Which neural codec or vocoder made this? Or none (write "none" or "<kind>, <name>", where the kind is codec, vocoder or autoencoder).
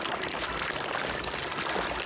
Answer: none